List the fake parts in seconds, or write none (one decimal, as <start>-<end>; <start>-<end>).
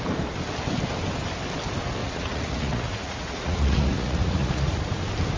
2.0-4.8